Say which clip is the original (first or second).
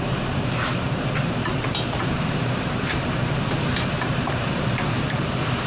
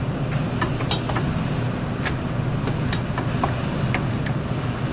second